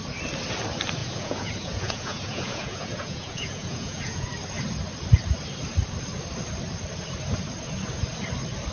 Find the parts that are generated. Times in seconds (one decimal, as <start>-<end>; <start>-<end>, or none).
1.0-4.3